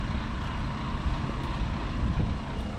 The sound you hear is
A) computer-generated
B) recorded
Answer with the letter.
B